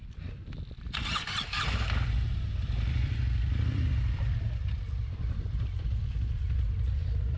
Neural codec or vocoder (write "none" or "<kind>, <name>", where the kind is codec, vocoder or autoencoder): vocoder, BigVGAN v2